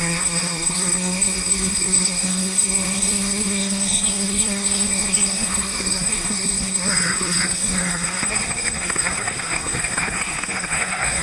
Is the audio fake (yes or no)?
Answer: yes